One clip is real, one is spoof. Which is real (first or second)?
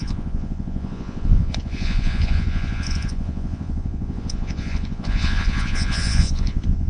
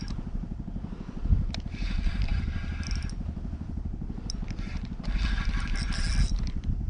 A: second